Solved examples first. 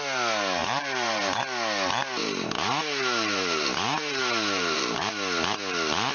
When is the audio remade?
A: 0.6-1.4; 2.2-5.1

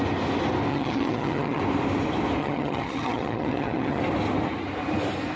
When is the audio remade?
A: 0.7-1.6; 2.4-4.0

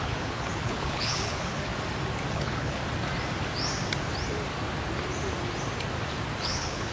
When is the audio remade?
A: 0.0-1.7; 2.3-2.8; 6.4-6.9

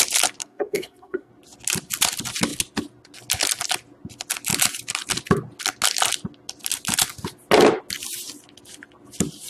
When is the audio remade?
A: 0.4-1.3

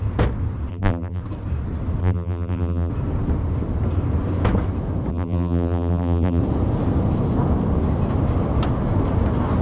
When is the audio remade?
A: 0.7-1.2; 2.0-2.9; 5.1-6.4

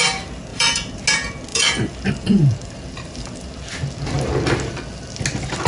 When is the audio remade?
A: 0.5-1.0; 1.5-3.4